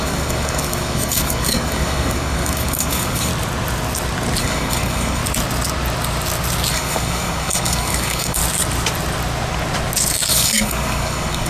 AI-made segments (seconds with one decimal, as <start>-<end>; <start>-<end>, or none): 0.0-3.3; 4.4-5.2; 6.7-8.4; 10.3-11.5